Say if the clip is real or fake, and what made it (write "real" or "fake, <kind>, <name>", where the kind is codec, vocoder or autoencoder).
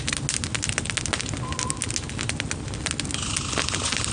real